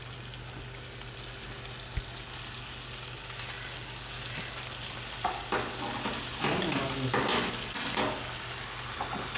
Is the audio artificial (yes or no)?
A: no